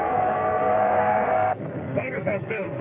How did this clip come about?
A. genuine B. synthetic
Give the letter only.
B